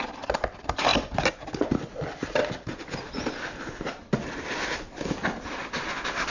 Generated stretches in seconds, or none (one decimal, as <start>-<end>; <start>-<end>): none